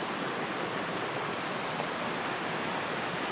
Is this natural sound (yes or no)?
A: yes